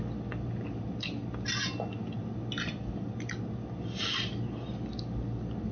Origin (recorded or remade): recorded